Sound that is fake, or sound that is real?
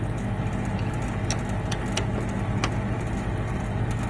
real